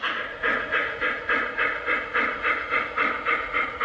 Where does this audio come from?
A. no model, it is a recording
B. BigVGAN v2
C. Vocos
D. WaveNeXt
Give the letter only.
C